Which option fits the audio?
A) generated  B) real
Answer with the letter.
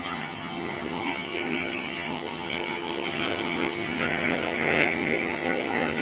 A